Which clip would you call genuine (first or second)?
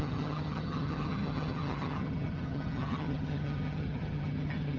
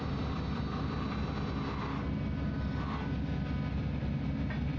second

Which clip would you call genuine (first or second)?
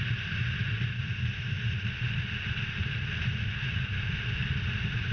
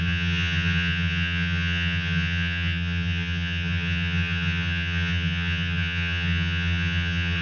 first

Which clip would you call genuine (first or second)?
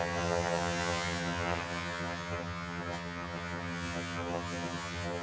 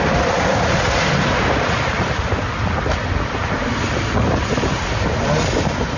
second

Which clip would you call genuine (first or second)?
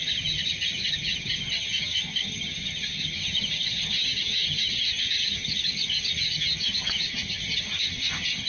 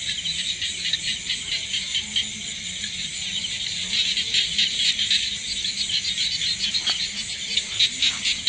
second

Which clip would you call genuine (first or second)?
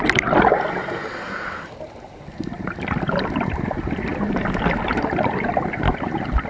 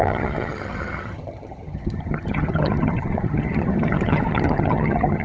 first